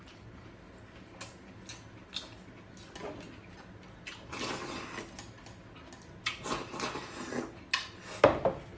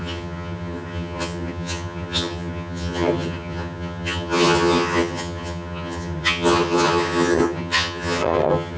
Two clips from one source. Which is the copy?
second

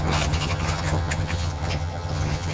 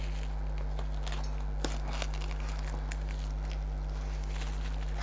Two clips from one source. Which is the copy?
first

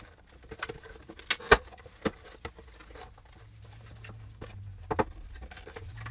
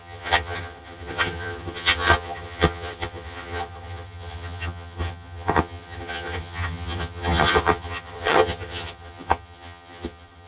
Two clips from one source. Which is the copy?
second